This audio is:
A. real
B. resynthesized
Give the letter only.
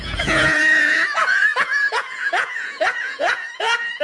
B